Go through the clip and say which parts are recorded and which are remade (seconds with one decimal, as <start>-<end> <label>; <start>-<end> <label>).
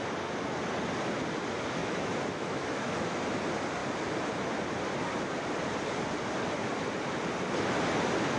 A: 0.0-1.8 recorded; 1.8-3.3 remade; 3.3-8.4 recorded